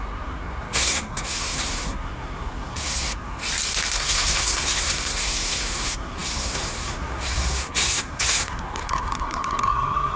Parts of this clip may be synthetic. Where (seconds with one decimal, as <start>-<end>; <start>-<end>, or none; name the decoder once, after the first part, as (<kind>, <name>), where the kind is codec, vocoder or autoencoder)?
0.0-3.4 (codec, SNAC); 3.9-10.2